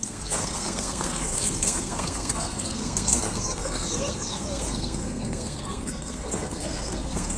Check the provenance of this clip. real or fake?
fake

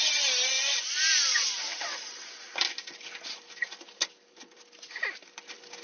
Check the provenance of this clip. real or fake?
real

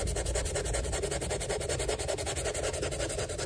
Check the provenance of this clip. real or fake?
real